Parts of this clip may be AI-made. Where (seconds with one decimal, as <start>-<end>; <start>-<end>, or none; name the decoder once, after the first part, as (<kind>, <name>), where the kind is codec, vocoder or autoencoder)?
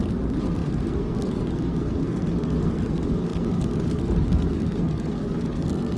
0.0-6.0 (codec, SNAC)